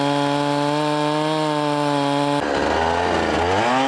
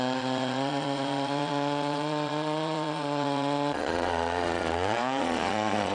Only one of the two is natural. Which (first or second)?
first